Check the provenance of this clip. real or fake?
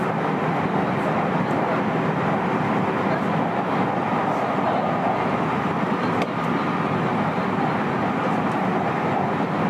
real